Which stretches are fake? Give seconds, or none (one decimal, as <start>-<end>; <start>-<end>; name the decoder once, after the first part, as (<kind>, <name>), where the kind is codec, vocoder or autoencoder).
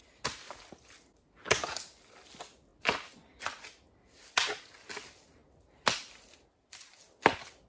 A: none